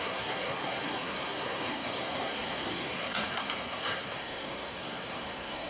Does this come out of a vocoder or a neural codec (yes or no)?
yes